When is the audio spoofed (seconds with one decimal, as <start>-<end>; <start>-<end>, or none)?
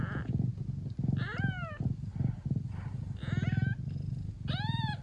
none